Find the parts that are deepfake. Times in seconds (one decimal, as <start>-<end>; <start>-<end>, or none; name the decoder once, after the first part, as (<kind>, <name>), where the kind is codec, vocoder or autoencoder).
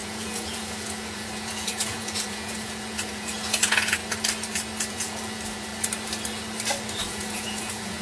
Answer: 0.0-4.0 (vocoder, Vocos); 4.9-5.7; 7.0-8.0